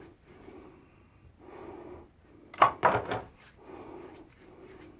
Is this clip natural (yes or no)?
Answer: yes